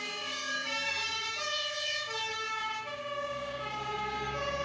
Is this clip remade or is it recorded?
remade